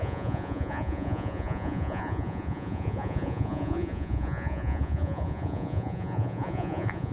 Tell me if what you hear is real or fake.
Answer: fake